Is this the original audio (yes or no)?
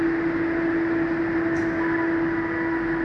yes